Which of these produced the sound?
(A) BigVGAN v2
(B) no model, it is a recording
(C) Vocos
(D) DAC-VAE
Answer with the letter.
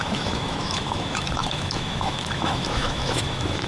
D